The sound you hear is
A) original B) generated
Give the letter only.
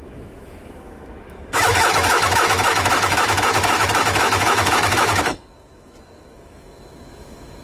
B